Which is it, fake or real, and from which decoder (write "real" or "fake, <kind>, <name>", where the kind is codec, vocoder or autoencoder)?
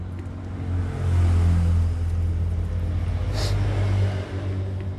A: real